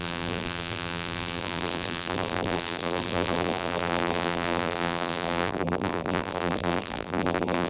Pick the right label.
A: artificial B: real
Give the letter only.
A